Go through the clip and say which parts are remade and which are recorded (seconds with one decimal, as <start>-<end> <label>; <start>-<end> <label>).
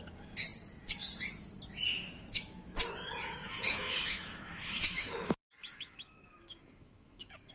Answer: 0.0-1.9 recorded; 1.9-2.9 remade; 2.9-3.7 recorded; 3.7-7.5 remade